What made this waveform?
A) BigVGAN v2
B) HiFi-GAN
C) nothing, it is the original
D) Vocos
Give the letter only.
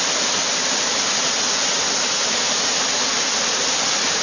C